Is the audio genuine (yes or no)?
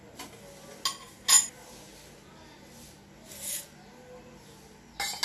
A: yes